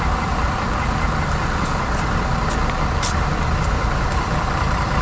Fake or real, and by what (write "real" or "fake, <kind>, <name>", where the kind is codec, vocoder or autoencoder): real